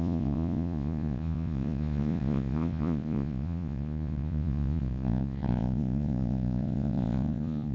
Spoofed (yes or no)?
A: yes